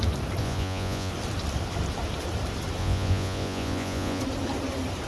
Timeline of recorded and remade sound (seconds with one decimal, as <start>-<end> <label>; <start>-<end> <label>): 0.0-0.4 recorded; 0.4-1.1 remade; 1.1-2.8 recorded; 2.8-4.2 remade; 4.2-5.1 recorded